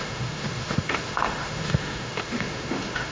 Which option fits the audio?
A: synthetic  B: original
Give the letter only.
A